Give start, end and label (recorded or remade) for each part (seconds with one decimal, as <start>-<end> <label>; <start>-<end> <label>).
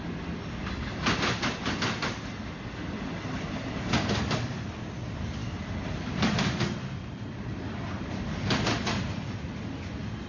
0.0-10.3 recorded